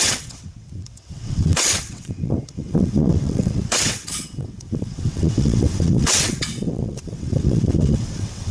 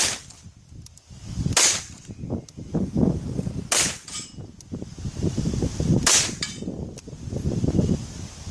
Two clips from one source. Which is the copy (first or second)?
first